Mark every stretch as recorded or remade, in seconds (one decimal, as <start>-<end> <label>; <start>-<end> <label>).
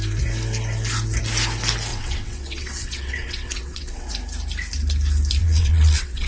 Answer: 0.0-1.9 recorded; 1.9-4.1 remade; 4.1-5.4 recorded; 5.4-6.3 remade